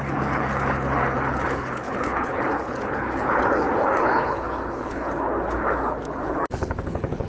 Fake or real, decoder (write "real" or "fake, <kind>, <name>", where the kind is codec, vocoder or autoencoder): fake, codec, HILCodec